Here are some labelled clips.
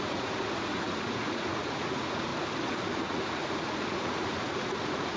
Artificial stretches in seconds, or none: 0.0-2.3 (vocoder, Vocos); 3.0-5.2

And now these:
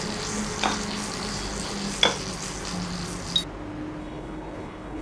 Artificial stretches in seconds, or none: 4.0-5.0 (codec, HILCodec)

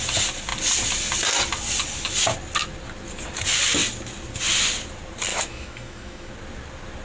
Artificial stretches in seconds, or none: 5.3-6.3 (autoencoder, DAC-VAE)

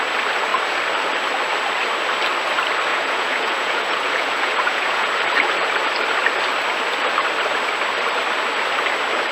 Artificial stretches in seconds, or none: 2.9-5.1 (vocoder, Vocos)

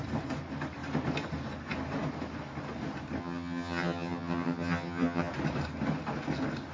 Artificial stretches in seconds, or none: 3.2-5.3 (vocoder, HiFi-GAN)

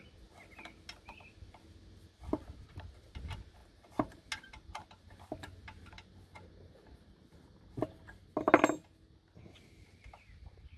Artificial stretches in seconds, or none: 3.6-4.2 (vocoder, BigVGAN v2)